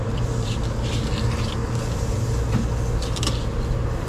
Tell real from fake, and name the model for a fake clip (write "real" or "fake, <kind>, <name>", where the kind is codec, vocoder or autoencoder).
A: real